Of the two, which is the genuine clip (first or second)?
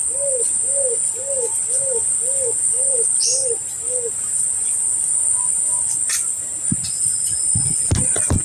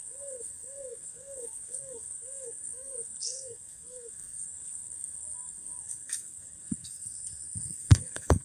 first